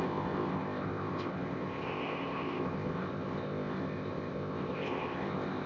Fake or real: fake